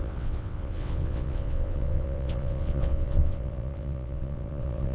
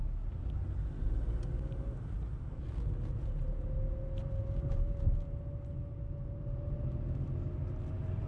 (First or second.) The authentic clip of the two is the second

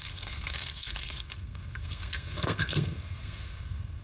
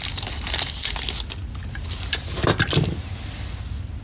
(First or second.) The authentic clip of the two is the second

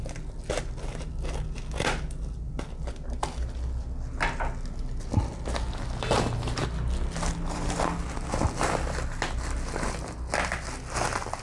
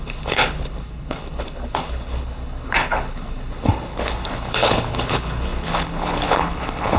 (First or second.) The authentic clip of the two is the first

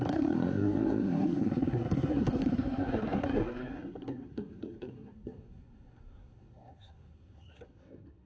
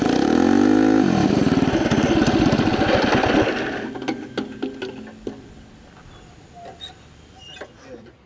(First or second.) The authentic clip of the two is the second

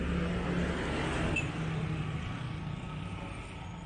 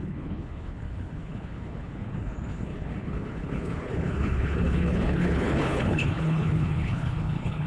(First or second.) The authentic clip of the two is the first